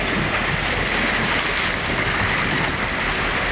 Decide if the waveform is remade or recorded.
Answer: recorded